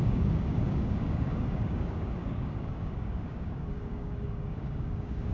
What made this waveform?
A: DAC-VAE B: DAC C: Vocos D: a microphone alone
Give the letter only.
B